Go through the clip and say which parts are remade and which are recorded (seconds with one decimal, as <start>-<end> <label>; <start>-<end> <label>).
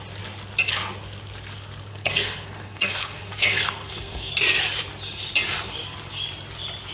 0.0-1.9 recorded; 1.9-4.3 remade; 4.3-6.9 recorded